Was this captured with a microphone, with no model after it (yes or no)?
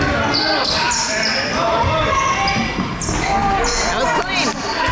yes